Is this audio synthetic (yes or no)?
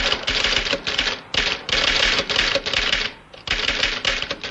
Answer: no